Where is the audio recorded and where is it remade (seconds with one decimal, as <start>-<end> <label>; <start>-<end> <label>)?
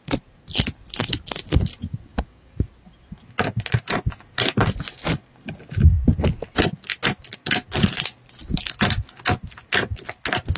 0.0-2.1 recorded; 2.1-2.7 remade; 2.7-10.6 recorded